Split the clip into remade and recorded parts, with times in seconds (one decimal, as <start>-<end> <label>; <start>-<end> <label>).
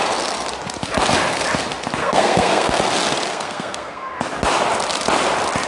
0.0-2.0 recorded; 2.0-2.8 remade; 2.8-3.3 recorded; 3.3-4.2 remade; 4.2-5.7 recorded